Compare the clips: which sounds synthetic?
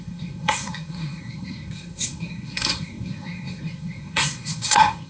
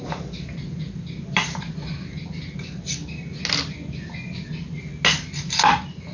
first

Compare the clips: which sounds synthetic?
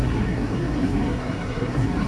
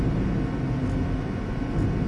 first